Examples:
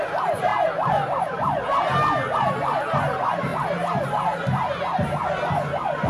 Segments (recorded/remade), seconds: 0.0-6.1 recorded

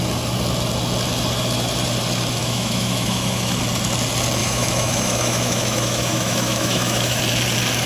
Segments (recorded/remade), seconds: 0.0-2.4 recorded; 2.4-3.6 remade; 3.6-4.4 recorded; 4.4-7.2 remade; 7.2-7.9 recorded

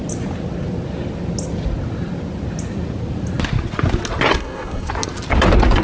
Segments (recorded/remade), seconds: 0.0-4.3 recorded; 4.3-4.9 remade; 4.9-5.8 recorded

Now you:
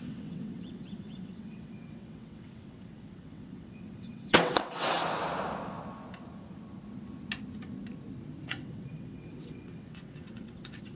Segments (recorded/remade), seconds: 0.0-5.0 remade; 5.0-8.5 recorded; 8.5-11.0 remade

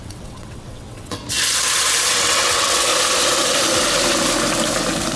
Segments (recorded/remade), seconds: 0.0-1.2 remade; 1.2-2.1 recorded; 2.1-2.9 remade; 2.9-5.2 recorded

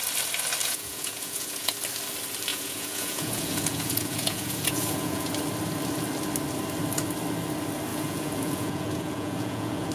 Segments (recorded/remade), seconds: 0.0-0.6 recorded; 0.6-1.7 remade; 1.7-2.5 recorded; 2.5-5.3 remade; 5.3-7.9 recorded; 7.9-9.9 remade

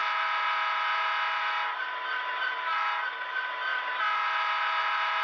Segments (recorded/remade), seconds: 0.0-5.2 recorded

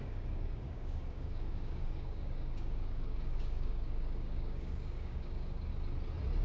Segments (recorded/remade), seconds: 0.0-5.7 remade; 5.7-6.4 recorded